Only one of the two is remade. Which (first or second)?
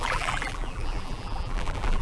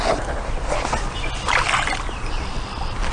first